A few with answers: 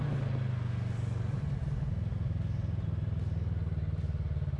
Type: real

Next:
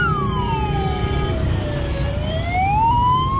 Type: real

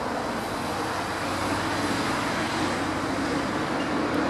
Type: real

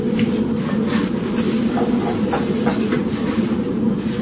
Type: real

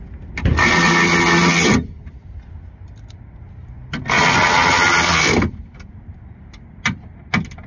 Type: real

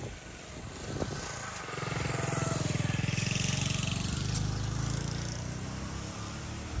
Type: real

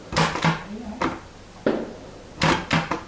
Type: real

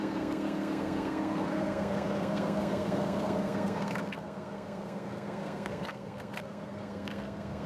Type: fake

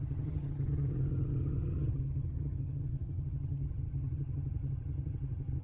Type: fake